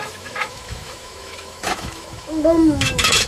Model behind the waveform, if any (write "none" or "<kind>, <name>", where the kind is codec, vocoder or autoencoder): autoencoder, DAC-VAE